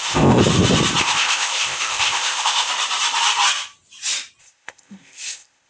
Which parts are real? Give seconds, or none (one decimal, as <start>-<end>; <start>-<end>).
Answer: 0.4-1.0; 2.7-4.4

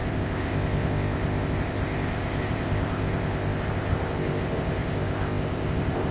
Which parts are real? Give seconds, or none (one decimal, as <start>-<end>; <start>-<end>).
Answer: none

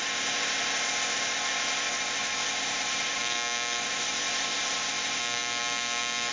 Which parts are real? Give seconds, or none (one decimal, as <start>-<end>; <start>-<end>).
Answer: 3.2-3.8; 5.2-6.3

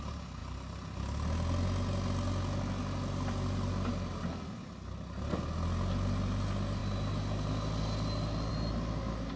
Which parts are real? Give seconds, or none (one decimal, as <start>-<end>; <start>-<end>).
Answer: 0.0-9.4

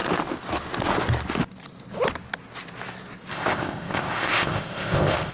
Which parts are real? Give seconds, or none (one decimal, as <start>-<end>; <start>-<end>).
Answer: 0.0-3.3

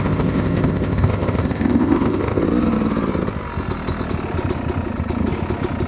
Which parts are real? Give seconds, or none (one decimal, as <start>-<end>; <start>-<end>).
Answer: 2.4-5.9

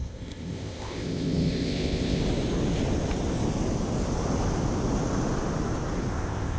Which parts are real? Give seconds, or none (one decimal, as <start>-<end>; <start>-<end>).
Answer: 2.2-6.1